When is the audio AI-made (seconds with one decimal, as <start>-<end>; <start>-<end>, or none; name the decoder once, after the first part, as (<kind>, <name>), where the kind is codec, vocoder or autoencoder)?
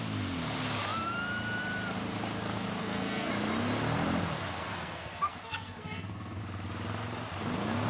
2.8-3.3 (codec, SNAC); 4.5-6.4